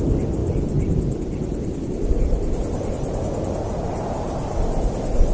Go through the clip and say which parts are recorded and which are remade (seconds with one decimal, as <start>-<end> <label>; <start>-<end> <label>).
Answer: 0.0-5.3 recorded